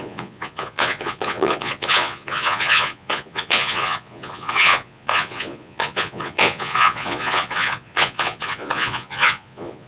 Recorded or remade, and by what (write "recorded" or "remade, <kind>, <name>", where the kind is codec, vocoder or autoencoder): remade, vocoder, Vocos